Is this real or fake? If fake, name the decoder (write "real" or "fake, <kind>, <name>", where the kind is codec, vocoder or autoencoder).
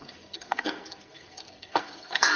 fake, codec, SNAC